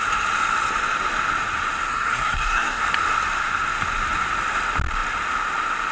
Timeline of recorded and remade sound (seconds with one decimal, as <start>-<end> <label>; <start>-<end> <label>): 0.0-1.9 recorded; 1.9-2.8 remade; 2.8-5.9 recorded